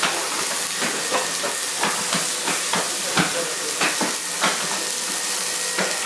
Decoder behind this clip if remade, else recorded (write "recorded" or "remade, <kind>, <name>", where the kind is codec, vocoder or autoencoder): recorded